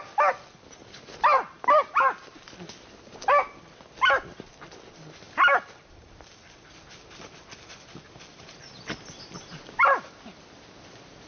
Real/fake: real